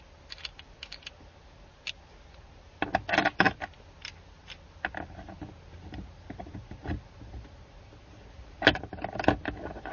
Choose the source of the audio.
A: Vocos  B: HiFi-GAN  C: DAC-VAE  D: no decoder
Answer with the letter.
D